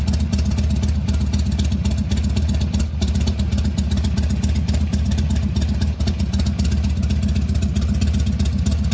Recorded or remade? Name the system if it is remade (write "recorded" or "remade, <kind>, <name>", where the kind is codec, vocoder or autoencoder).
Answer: recorded